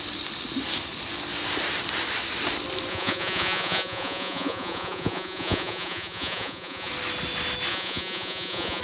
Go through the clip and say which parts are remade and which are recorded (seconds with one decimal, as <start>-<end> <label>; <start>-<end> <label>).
0.0-2.9 recorded; 2.9-6.9 remade; 6.9-7.7 recorded; 7.7-8.8 remade